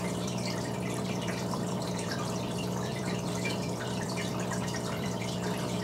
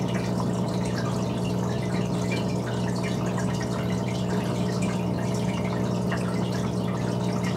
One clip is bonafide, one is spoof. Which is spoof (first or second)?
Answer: first